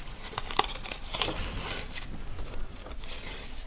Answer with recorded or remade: recorded